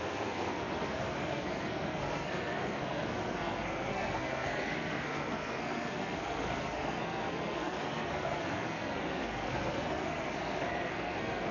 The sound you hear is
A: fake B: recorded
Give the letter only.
A